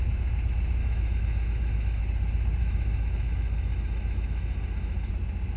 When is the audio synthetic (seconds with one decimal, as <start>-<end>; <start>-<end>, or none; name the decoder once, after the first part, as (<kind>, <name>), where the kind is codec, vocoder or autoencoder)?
0.8-2.0 (autoencoder, DAC-VAE); 2.6-5.1